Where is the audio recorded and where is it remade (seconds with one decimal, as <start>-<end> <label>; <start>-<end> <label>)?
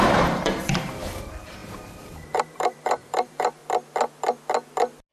0.0-3.6 remade; 3.6-5.1 recorded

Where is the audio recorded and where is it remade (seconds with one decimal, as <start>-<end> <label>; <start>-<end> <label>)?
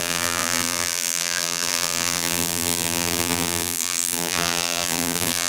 0.0-5.5 remade